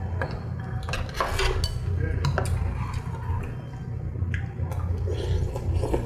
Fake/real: real